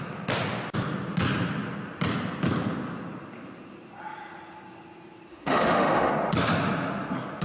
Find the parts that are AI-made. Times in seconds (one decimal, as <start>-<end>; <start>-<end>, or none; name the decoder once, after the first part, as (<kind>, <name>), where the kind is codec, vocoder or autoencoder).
5.3-6.1 (autoencoder, DAC-VAE)